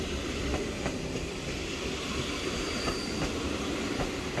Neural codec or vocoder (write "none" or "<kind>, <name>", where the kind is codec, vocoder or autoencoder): vocoder, BigVGAN v2